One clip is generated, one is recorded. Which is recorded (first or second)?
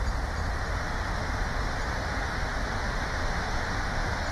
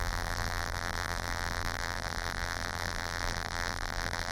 first